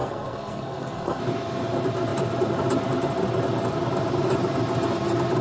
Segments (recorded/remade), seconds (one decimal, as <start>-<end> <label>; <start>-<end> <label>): 0.0-1.2 remade; 1.2-5.4 recorded